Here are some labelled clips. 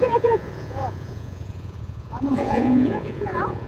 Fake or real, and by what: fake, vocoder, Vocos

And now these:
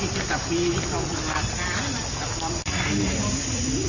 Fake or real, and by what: real